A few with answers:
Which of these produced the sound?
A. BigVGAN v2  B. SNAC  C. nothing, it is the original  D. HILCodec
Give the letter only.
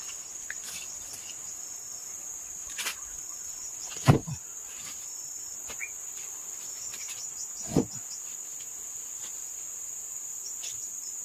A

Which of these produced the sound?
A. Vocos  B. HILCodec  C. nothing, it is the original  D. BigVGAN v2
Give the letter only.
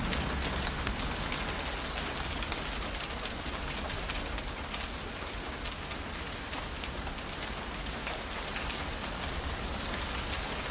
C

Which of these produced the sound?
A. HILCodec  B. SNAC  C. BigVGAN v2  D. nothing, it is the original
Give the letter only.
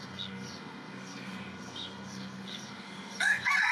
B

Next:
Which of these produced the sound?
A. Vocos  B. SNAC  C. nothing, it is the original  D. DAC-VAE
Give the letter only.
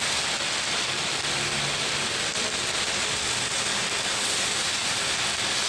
C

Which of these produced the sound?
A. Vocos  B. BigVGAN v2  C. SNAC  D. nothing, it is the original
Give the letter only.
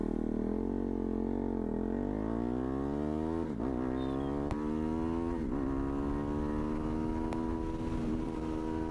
D